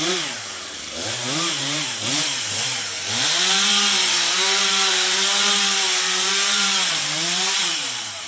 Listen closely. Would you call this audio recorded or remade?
remade